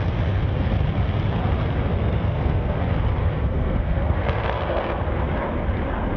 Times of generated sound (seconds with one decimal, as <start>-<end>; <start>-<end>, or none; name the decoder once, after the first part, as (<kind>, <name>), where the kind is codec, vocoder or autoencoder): 2.0-2.8 (codec, SNAC); 3.2-5.1